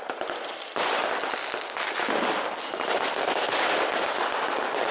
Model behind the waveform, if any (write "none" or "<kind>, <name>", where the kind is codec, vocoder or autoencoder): none